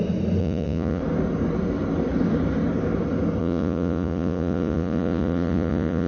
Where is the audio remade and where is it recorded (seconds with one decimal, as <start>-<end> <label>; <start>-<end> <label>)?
0.0-0.4 recorded; 0.4-1.0 remade; 1.0-3.4 recorded; 3.4-6.1 remade